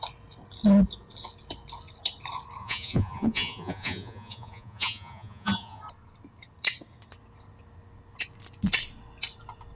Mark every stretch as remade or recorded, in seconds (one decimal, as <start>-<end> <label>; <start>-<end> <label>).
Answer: 0.0-2.6 recorded; 2.6-5.8 remade; 5.8-9.8 recorded